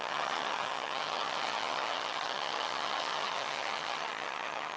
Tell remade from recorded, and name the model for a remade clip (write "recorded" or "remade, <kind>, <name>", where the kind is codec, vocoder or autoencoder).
remade, vocoder, HiFi-GAN